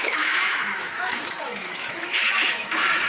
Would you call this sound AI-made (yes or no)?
yes